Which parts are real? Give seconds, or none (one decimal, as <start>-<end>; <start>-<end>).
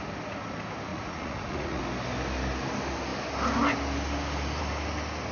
0.0-0.9; 1.8-5.3